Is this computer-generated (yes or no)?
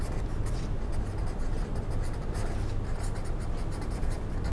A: no